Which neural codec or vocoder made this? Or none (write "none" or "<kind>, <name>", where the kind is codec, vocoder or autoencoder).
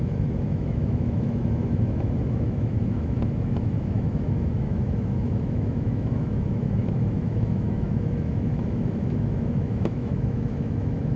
autoencoder, DAC-VAE